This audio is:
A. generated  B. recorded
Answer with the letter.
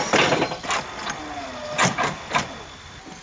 B